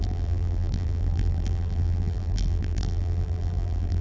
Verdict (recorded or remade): remade